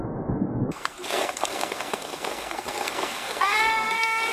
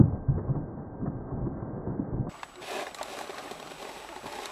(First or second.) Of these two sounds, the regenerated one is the first